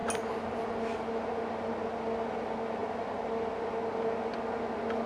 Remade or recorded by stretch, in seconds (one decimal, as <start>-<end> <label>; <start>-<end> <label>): 0.0-5.1 recorded